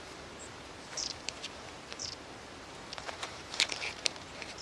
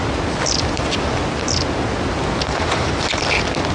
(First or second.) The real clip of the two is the second